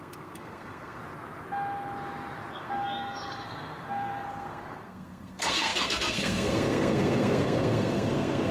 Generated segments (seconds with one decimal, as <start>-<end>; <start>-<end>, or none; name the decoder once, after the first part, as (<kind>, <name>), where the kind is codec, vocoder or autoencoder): 0.0-1.0 (codec, SNAC); 2.5-8.5